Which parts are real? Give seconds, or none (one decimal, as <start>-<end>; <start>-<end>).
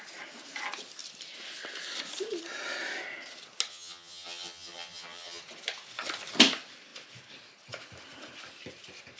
0.0-3.7; 5.4-9.2